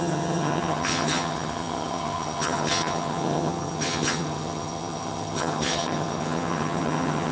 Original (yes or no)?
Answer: no